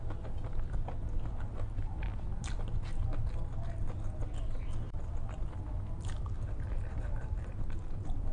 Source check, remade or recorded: recorded